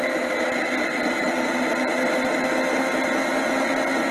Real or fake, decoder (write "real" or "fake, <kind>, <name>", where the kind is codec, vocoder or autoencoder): real